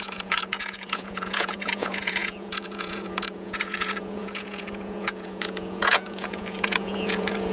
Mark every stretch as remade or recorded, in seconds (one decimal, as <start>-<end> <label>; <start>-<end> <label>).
0.0-7.5 remade